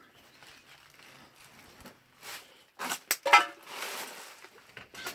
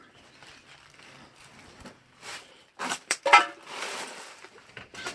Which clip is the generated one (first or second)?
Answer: second